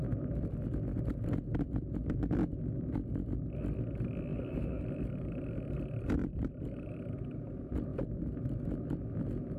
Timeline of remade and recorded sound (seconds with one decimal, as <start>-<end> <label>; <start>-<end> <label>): 0.0-4.3 recorded; 4.3-5.4 remade; 5.4-6.2 recorded; 6.2-7.0 remade; 7.0-7.9 recorded; 7.9-8.4 remade; 8.4-9.6 recorded